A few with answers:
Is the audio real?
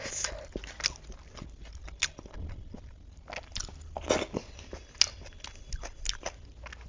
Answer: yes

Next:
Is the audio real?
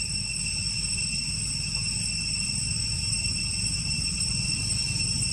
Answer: yes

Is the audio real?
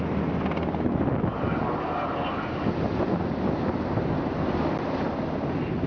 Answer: yes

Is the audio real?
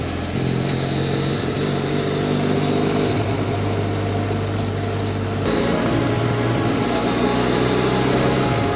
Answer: yes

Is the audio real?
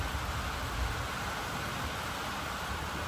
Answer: yes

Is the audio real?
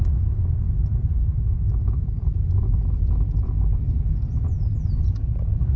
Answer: no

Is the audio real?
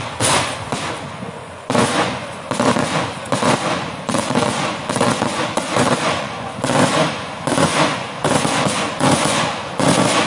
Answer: no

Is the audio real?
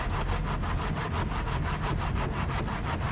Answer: yes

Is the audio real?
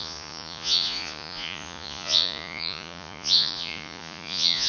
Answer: no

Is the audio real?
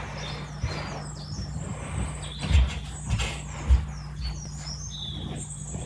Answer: yes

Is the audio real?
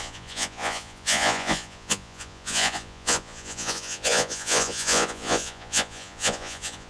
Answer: no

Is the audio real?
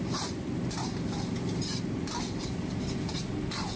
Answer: yes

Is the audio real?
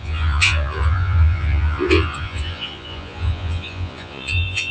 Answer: no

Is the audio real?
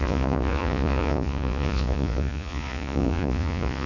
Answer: no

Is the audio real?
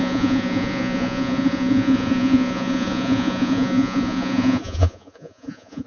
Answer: no